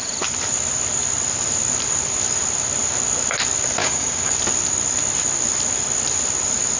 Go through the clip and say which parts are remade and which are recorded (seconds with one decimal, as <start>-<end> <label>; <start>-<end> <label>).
0.0-3.8 recorded; 3.8-4.3 remade; 4.3-6.8 recorded